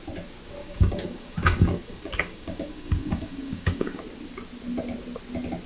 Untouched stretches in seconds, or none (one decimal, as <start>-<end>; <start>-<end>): 0.0-0.6; 4.0-5.7